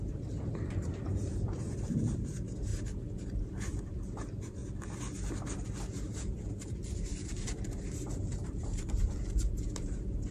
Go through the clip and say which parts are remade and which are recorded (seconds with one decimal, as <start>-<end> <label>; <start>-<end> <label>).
0.0-2.7 remade; 2.7-3.4 recorded; 3.4-4.6 remade; 4.6-5.9 recorded; 5.9-10.3 remade